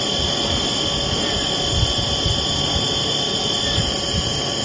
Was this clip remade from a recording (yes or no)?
no